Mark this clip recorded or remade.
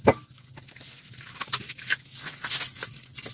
recorded